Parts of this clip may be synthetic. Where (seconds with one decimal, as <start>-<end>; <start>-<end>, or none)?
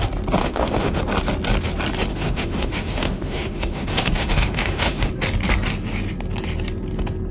0.4-1.0; 2.1-5.1